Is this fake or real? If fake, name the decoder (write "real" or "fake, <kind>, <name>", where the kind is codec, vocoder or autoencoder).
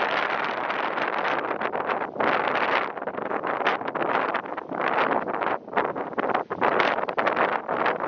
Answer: real